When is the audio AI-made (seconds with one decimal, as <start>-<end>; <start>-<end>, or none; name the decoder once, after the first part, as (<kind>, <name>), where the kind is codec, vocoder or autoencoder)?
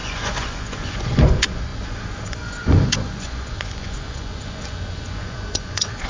0.0-6.1 (vocoder, Vocos)